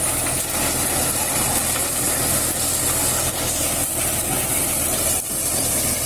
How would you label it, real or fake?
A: real